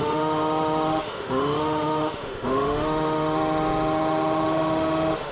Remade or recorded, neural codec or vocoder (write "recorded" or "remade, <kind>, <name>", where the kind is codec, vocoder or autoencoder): remade, autoencoder, DAC-VAE